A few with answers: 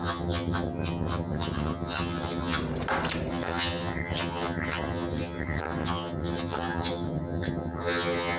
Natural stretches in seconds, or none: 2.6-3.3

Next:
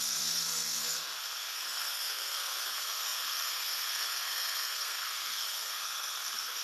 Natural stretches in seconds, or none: none

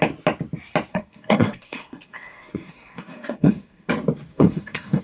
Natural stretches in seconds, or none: 0.0-0.9; 3.9-4.3

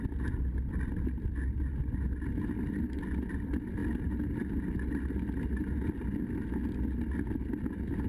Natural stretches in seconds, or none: 0.0-8.1